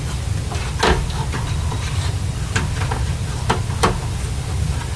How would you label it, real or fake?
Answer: real